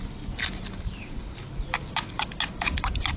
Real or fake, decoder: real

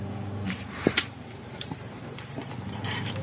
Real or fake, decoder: fake, vocoder, BigVGAN v2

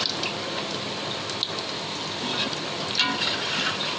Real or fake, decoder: real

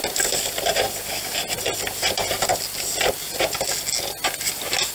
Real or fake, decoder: real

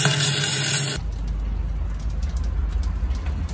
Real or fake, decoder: real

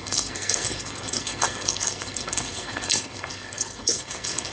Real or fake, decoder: fake, codec, SNAC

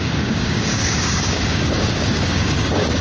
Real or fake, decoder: fake, codec, DAC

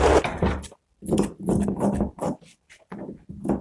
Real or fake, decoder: real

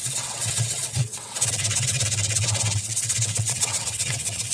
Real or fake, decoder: fake, vocoder, WaveNeXt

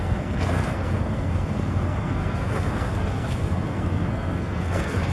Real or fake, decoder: fake, codec, SNAC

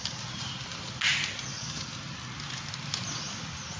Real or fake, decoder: real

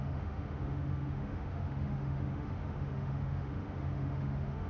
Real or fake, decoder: fake, autoencoder, DAC-VAE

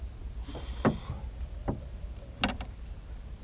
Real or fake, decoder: real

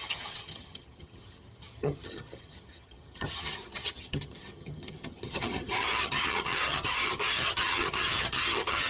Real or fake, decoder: fake, vocoder, HiFi-GAN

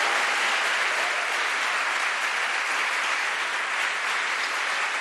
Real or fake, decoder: real